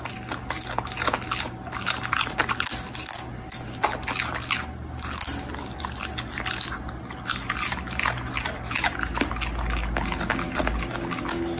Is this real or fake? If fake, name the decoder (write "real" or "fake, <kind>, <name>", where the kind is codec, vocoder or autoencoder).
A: real